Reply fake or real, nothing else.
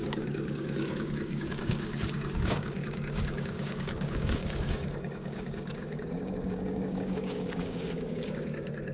fake